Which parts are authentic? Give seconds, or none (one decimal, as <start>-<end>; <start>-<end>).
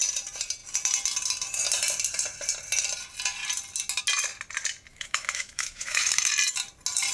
0.0-4.9; 6.3-7.1